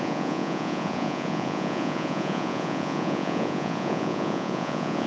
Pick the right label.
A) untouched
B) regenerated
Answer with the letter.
B